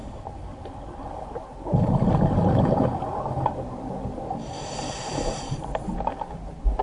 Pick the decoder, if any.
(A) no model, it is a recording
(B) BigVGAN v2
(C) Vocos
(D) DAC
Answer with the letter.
A